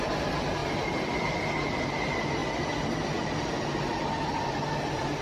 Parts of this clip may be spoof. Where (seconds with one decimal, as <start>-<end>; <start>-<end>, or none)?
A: none